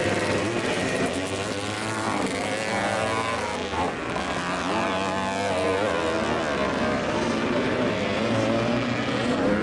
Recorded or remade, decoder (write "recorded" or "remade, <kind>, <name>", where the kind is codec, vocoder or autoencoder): recorded